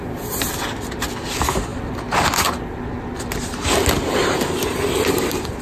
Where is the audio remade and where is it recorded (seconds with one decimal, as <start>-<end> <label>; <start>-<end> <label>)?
0.0-4.7 recorded; 4.7-5.6 remade